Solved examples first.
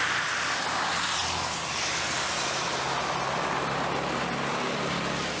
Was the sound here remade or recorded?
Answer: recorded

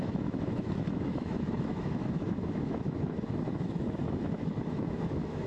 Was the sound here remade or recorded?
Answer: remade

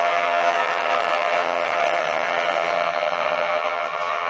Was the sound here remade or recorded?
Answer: remade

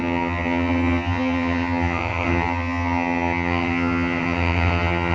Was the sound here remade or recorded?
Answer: remade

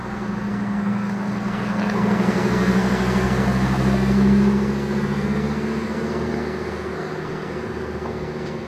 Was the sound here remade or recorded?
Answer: remade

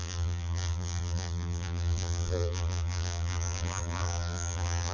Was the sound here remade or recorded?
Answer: remade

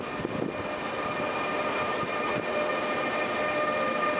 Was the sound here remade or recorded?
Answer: recorded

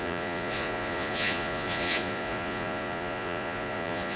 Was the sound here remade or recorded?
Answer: remade